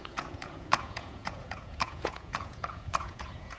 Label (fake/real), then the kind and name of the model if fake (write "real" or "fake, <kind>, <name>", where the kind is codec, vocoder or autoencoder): fake, vocoder, Vocos